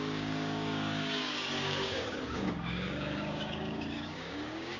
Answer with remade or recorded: remade